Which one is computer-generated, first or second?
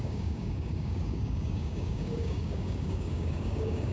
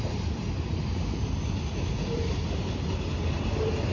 first